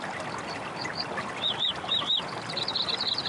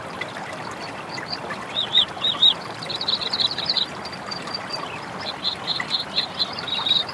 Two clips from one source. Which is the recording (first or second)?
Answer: first